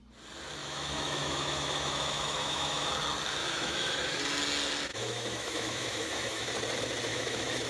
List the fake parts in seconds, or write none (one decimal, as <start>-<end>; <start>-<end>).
0.6-2.9; 3.4-4.2; 4.9-6.5; 7.1-7.7